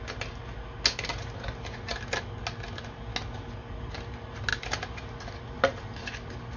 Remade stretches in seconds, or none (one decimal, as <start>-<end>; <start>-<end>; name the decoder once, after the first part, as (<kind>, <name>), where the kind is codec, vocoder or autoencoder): none